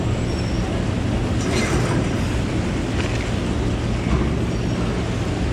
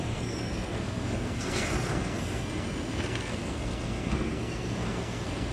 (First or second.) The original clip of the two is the first